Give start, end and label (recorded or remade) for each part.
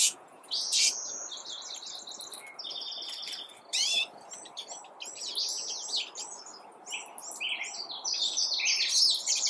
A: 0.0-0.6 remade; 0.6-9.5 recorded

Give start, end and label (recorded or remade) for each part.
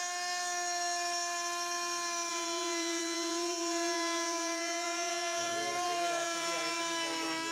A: 0.0-2.3 recorded; 2.3-6.8 remade; 6.8-7.5 recorded